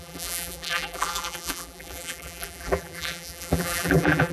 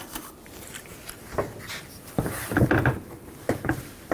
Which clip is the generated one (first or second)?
first